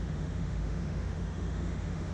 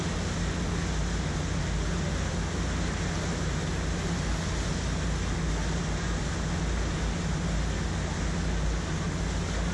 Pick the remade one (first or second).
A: first